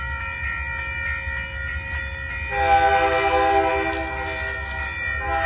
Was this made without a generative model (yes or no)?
yes